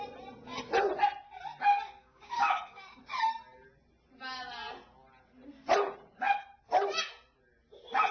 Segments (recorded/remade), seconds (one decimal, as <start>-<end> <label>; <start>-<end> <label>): 0.0-2.0 recorded; 2.0-3.0 remade; 3.0-8.1 recorded